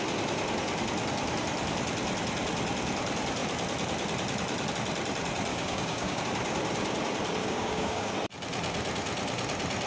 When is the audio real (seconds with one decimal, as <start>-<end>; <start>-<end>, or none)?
0.0-5.5; 6.2-7.4; 8.1-9.9